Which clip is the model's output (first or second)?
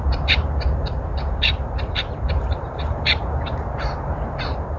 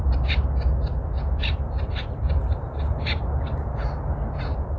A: first